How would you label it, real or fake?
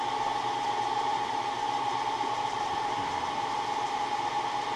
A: fake